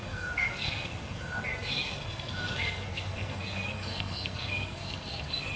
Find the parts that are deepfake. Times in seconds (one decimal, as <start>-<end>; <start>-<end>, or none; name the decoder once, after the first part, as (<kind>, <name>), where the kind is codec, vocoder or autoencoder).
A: 0.0-5.6 (codec, SNAC)